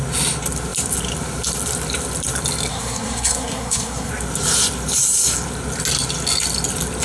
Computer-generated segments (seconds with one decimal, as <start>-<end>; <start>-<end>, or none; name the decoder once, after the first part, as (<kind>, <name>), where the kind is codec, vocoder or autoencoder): 2.7-4.1 (codec, SNAC)